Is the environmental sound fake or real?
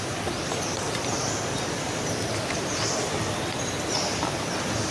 fake